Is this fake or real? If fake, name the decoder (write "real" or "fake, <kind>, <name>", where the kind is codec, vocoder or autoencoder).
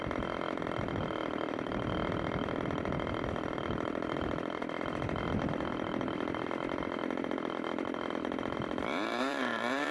fake, vocoder, BigVGAN v2